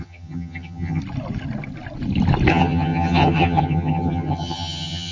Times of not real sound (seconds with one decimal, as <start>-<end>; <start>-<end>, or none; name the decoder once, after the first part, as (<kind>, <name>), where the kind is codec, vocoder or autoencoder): 0.0-1.0 (vocoder, HiFi-GAN); 2.5-5.1